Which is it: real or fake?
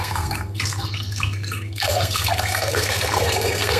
fake